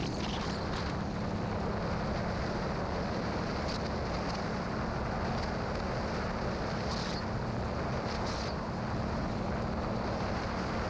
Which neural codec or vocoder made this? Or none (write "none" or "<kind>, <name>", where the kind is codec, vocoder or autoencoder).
none